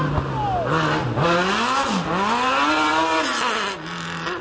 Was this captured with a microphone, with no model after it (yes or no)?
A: yes